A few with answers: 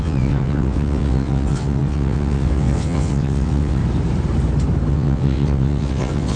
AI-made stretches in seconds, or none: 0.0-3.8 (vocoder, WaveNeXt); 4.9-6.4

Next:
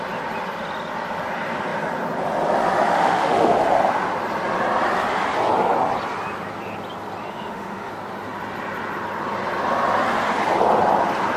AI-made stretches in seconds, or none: 2.9-3.5 (autoencoder, DAC-VAE); 7.2-7.9

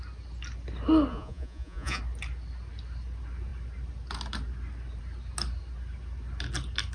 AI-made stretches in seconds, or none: 1.1-2.0 (vocoder, Vocos)